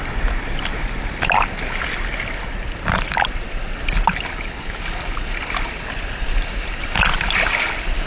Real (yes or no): yes